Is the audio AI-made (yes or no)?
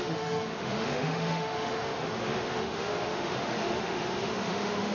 yes